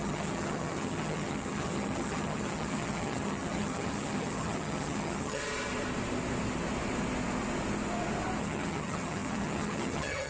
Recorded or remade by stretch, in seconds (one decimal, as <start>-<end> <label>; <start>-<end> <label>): 0.0-5.4 remade; 5.4-8.4 recorded; 8.4-10.3 remade